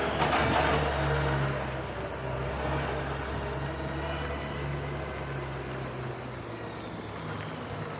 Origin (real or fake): real